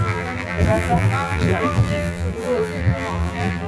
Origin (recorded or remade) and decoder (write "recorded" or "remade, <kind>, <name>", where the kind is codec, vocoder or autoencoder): remade, vocoder, BigVGAN v2